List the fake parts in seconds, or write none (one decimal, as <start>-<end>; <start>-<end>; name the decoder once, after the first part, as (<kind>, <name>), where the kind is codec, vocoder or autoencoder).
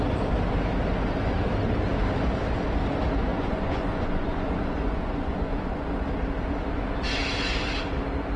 3.3-5.9 (vocoder, Vocos)